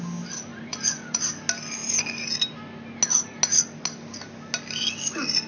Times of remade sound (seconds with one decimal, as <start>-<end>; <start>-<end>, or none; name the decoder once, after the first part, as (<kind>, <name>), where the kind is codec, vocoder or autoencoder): 0.5-1.2 (vocoder, Vocos)

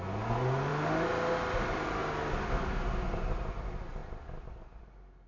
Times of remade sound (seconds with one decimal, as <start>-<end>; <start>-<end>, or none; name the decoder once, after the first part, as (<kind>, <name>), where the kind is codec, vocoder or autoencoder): none

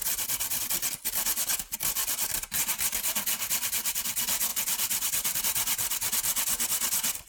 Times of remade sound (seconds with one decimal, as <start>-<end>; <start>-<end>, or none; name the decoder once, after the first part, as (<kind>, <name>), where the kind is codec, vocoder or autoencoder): 0.0-0.6 (vocoder, BigVGAN v2); 2.0-4.0; 4.5-5.4

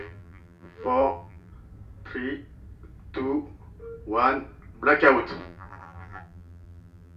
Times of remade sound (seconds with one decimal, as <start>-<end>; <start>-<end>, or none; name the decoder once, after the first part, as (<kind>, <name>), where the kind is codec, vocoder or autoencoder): 0.0-1.5 (vocoder, BigVGAN v2); 5.4-7.2

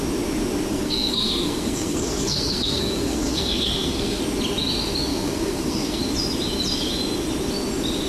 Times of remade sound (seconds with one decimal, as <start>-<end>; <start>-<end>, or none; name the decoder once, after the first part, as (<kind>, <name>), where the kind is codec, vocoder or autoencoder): 0.7-4.2 (codec, SNAC); 5.1-6.0

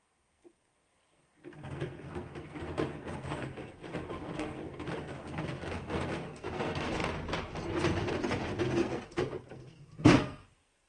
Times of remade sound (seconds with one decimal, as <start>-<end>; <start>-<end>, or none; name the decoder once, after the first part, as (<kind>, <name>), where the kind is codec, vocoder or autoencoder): 0.0-7.0 (codec, SNAC); 8.6-10.9

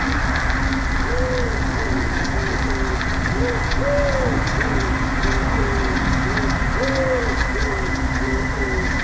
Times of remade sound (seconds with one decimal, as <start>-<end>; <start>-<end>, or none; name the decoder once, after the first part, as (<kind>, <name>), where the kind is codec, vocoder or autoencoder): none